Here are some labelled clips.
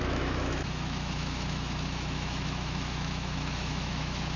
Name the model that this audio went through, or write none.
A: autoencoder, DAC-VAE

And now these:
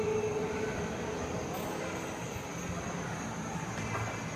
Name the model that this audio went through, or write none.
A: none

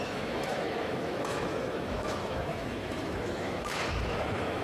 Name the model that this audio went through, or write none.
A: autoencoder, DAC-VAE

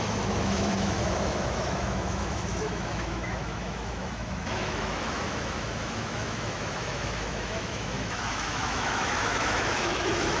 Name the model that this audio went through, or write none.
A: autoencoder, DAC-VAE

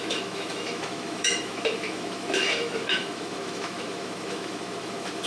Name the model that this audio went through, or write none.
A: autoencoder, DAC-VAE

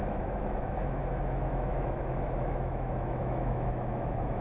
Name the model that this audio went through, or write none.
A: autoencoder, DAC-VAE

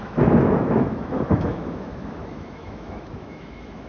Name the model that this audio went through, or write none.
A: autoencoder, DAC-VAE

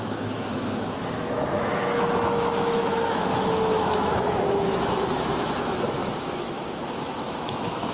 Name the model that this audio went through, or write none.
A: autoencoder, DAC-VAE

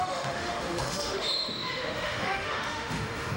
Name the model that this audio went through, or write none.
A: autoencoder, DAC-VAE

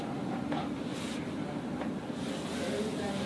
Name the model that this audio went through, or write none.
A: none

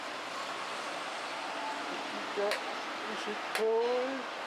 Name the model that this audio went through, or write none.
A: none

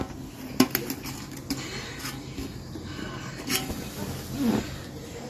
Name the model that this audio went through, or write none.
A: none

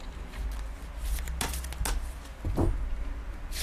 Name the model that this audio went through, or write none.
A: none